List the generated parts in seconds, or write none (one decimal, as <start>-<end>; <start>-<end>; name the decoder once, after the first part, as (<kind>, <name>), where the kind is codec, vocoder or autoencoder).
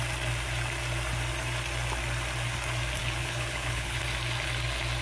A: 3.0-4.0 (codec, HILCodec)